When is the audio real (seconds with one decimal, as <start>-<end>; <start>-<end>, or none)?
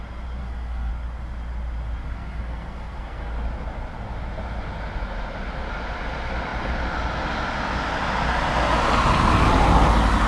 0.0-0.4; 0.9-2.0; 3.3-10.3